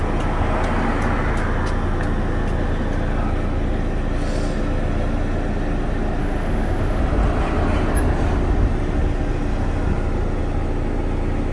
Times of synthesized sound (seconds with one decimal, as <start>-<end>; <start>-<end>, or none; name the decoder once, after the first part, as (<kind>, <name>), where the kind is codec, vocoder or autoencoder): 6.2-7.0 (autoencoder, DAC-VAE)